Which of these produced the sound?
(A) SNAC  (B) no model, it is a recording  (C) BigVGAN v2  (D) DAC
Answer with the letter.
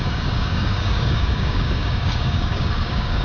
D